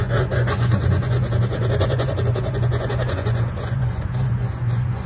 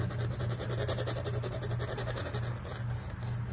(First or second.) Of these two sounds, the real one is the second